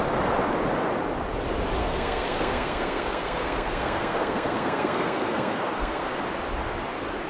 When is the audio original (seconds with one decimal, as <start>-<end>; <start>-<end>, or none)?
0.0-1.8; 6.2-7.3